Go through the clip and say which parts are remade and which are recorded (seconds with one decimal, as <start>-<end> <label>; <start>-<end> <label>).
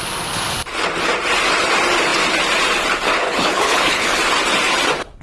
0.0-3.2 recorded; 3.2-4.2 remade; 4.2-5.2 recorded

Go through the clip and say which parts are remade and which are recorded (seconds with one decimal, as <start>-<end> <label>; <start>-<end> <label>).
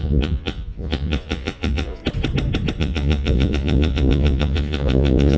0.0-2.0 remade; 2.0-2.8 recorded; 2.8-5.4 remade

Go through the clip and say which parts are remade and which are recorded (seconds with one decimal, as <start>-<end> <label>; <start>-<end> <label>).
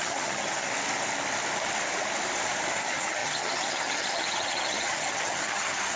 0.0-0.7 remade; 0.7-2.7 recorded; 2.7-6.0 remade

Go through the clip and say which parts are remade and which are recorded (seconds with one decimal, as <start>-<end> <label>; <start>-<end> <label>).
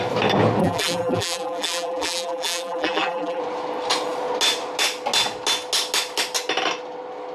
0.0-0.6 recorded; 0.6-3.4 remade; 3.4-7.3 recorded